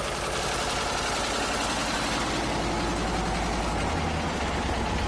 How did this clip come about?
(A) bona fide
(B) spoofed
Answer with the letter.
A